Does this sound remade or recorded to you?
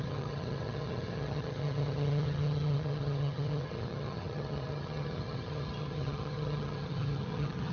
remade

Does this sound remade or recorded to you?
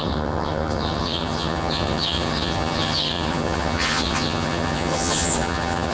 remade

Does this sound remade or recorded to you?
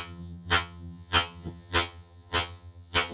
remade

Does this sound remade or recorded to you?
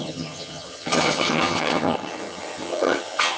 remade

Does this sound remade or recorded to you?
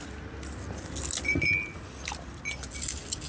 recorded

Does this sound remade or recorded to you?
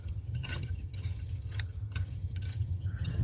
remade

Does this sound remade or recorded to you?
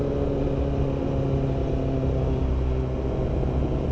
recorded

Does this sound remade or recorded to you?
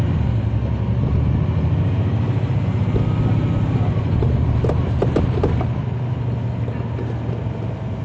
recorded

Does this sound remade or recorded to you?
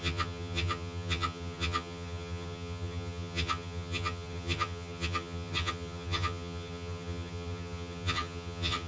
remade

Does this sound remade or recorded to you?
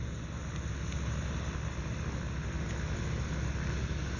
recorded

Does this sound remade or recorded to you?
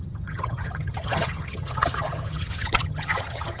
remade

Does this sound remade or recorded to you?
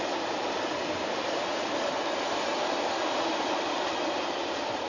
recorded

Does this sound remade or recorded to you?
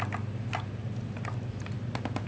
recorded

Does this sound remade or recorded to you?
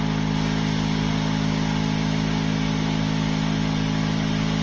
recorded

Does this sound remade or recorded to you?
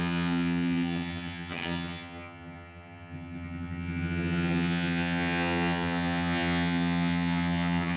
remade